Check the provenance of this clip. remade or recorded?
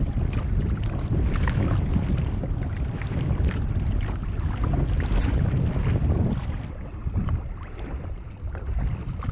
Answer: recorded